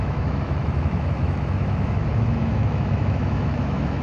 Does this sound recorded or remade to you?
remade